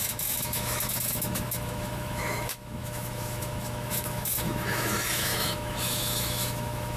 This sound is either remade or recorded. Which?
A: remade